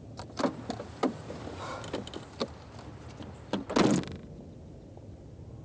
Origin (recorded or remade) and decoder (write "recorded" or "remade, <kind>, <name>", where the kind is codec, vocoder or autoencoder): recorded